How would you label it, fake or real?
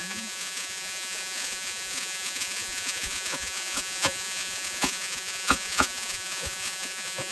fake